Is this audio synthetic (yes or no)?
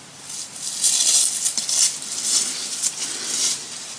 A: no